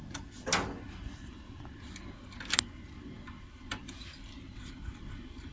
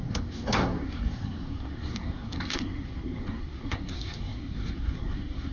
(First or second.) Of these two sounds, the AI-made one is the second